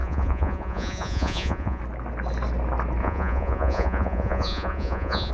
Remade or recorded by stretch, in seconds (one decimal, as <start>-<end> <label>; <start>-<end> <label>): 0.0-1.8 remade; 1.8-3.0 recorded; 3.0-5.3 remade